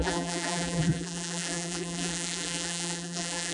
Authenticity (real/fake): fake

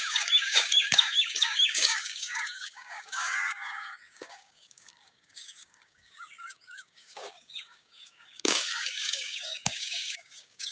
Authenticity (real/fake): fake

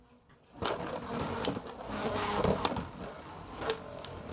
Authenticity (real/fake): real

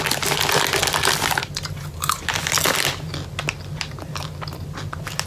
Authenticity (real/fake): real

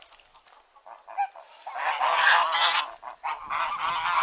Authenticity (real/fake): real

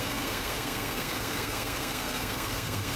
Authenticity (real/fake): fake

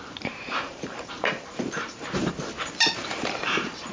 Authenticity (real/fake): fake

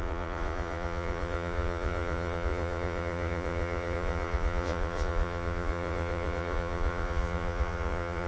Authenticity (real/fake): fake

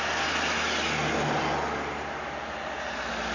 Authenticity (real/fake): real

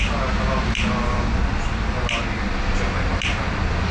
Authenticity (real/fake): real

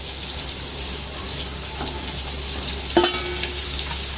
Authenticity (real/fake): real